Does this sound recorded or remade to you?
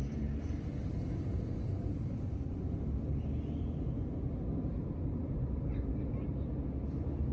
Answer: recorded